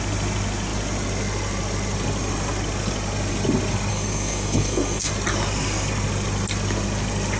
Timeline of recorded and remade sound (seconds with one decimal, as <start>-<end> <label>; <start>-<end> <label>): 0.0-3.9 recorded; 3.9-5.1 remade; 5.1-7.4 recorded